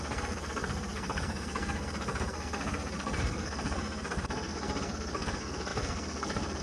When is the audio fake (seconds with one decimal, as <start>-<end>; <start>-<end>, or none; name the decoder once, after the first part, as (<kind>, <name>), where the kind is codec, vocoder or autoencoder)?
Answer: 0.0-6.6 (codec, SNAC)